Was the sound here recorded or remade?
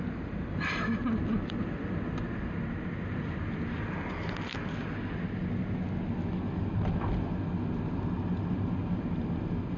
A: recorded